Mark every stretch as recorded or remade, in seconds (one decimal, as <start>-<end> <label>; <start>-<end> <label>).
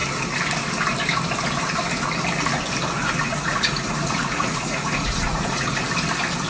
0.0-3.3 recorded; 3.3-5.8 remade; 5.8-6.5 recorded